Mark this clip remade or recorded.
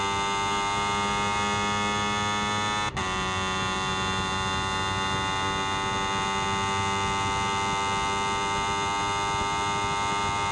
recorded